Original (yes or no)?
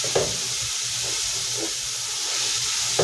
yes